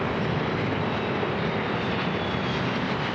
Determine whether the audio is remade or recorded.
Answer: recorded